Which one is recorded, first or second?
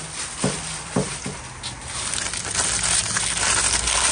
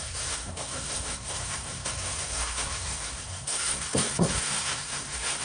first